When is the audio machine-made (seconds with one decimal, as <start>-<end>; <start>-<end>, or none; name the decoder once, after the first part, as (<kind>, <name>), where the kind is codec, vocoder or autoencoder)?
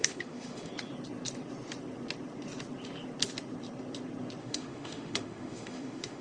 0.0-0.7 (autoencoder, DAC-VAE); 4.4-6.2